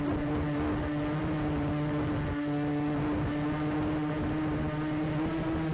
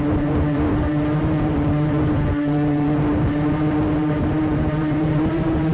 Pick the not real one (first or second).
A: second